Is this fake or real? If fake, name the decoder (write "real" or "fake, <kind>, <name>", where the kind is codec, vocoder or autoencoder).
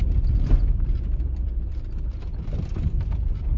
fake, vocoder, BigVGAN v2